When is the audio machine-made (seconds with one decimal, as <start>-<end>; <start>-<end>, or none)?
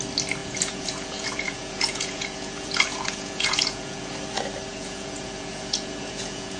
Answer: 0.4-4.1; 4.7-6.6